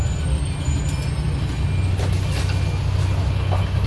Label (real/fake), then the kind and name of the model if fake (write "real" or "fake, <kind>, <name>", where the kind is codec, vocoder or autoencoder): real